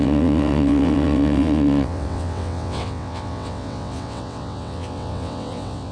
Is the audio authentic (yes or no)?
no